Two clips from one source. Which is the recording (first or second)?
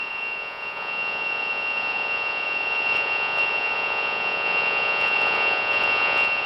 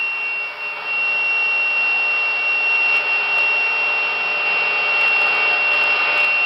second